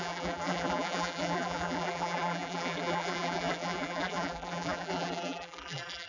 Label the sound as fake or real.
fake